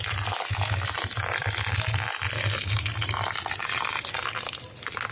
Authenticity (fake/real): real